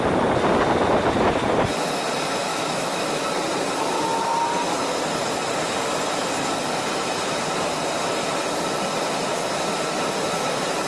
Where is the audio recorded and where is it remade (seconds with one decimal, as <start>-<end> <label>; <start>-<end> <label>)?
0.0-2.5 recorded; 2.5-3.2 remade; 3.2-10.9 recorded